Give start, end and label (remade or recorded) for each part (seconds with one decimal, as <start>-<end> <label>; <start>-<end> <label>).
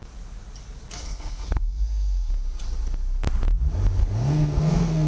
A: 0.0-1.0 recorded; 1.0-2.3 remade; 2.3-4.0 recorded; 4.0-5.1 remade